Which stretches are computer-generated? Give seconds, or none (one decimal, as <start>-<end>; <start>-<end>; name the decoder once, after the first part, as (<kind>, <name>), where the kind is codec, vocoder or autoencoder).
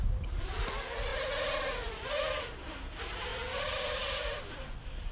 0.0-1.1 (vocoder, BigVGAN v2); 2.9-5.1